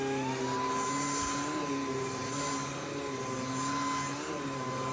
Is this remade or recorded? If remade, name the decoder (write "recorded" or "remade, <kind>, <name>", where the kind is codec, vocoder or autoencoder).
recorded